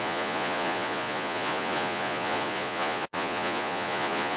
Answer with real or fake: fake